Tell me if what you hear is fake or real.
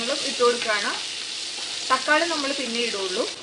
real